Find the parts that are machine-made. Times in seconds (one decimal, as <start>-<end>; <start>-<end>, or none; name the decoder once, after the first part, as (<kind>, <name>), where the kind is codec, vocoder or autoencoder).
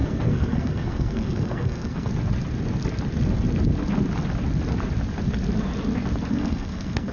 0.0-2.1 (codec, SNAC); 6.3-7.1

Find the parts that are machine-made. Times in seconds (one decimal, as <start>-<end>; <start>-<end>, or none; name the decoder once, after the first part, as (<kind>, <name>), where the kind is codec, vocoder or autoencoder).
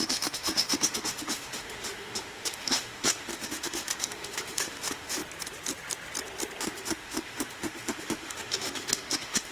0.0-5.2 (autoencoder, DAC-VAE); 6.6-9.5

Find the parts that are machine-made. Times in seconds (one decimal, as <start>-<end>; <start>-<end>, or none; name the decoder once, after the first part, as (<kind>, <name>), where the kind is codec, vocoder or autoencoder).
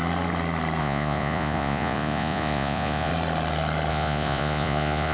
0.8-3.1 (vocoder, Vocos); 3.9-5.1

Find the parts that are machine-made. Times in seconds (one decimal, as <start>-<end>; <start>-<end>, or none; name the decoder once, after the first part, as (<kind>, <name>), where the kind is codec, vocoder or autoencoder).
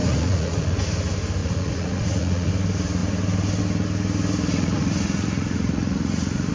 0.0-0.8 (vocoder, Vocos); 1.4-2.5; 4.5-6.5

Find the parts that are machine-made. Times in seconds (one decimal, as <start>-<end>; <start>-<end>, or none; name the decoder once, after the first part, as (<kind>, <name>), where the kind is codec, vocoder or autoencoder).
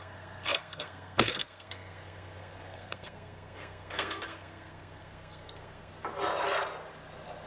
0.0-5.9 (codec, SNAC)